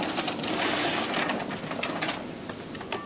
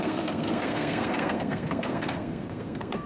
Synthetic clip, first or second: second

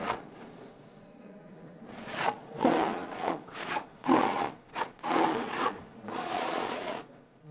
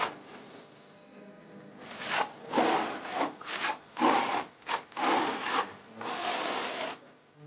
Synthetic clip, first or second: first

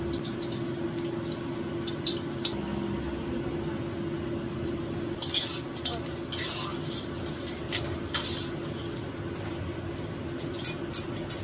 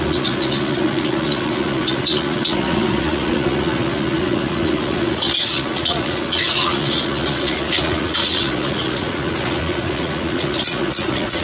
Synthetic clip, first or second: second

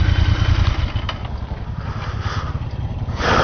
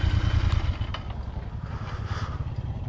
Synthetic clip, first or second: first